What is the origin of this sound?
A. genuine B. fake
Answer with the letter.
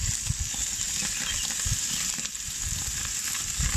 A